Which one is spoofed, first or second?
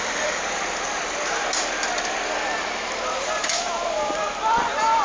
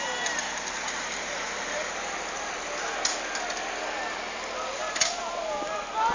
first